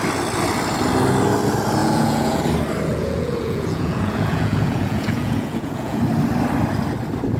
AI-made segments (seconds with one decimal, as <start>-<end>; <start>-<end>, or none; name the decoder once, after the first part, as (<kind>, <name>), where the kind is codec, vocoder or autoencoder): 1.8-2.4 (vocoder, Vocos); 2.9-6.0